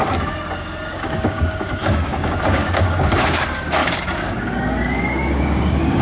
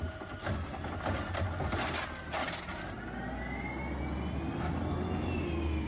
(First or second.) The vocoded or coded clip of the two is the first